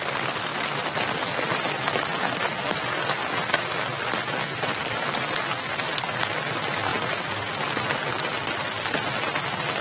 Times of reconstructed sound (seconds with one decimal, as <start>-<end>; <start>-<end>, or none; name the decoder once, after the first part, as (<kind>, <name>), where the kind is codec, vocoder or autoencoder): 0.0-0.5 (vocoder, BigVGAN v2); 1.5-2.7; 6.5-6.9; 8.5-9.8